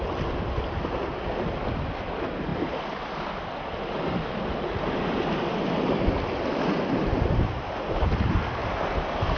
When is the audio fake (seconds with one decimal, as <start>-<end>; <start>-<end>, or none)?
none